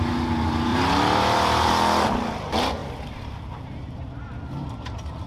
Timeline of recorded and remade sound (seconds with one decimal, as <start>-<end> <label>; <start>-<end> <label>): 0.0-0.7 recorded; 0.7-1.7 remade; 1.7-2.8 recorded; 2.8-4.2 remade; 4.2-5.3 recorded